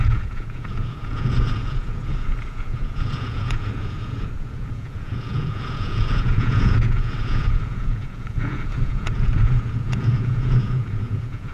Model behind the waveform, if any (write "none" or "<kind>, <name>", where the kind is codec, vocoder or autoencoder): vocoder, Vocos